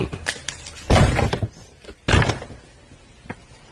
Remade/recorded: recorded